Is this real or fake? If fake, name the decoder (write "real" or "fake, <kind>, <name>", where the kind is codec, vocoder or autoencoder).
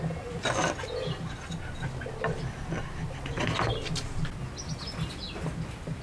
real